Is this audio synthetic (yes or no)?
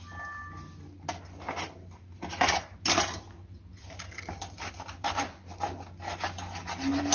no